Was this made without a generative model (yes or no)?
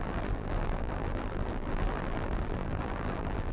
no